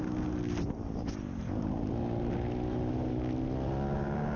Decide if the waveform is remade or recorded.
recorded